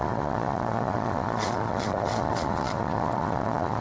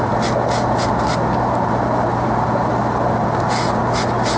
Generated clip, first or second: first